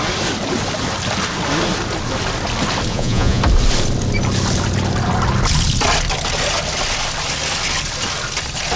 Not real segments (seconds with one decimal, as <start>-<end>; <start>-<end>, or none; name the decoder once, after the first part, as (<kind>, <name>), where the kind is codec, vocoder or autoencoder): 2.9-3.4 (vocoder, Vocos)